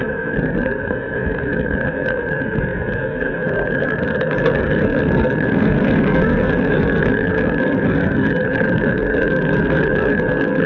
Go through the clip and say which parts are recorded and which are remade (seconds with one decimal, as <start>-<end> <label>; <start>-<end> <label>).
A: 0.0-10.7 remade